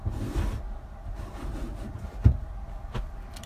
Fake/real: real